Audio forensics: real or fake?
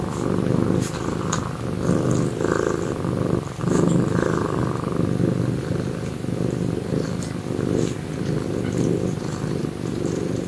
real